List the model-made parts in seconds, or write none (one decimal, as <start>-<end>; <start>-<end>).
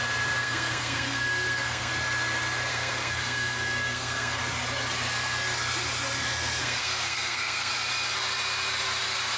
0.4-1.9; 2.7-4.4; 6.6-7.7